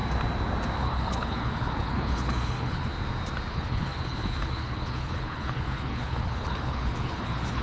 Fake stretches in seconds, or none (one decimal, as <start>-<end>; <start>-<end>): 0.8-2.9; 3.5-7.6